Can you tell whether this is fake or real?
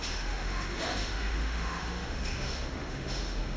fake